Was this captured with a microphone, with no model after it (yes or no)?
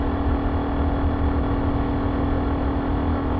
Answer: yes